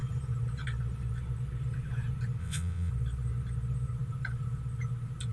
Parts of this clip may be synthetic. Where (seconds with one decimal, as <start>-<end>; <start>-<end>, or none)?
2.4-2.9